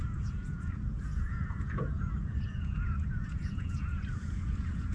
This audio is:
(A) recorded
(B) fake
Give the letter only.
B